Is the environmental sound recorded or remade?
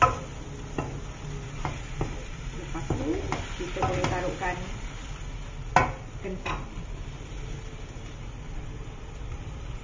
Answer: recorded